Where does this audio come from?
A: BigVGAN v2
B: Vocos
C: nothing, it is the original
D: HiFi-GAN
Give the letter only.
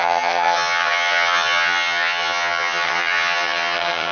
D